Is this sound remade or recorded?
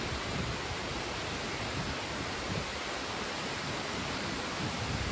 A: remade